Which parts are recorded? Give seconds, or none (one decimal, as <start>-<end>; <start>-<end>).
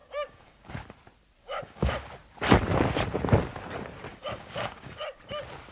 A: 0.7-1.4; 1.9-4.1; 5.0-5.7